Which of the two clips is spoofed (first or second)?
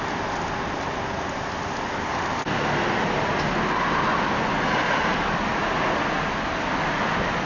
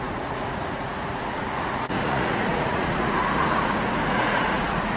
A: second